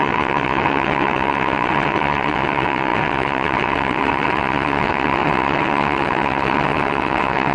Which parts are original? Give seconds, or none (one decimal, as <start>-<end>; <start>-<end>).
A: none